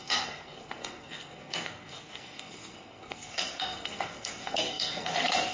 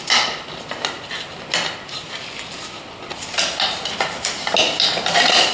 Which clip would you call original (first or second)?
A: second